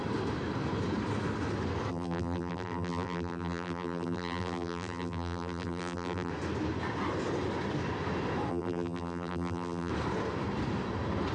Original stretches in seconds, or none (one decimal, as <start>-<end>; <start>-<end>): 0.0-1.9; 6.3-8.5; 9.9-11.3